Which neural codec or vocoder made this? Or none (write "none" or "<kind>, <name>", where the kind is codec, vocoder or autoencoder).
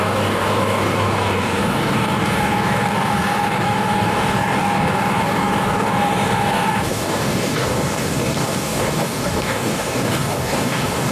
codec, DAC